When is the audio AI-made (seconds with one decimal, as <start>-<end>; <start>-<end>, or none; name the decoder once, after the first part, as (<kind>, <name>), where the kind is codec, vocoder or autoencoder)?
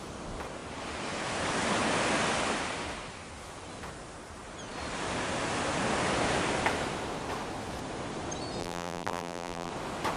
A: 8.6-9.7 (vocoder, BigVGAN v2)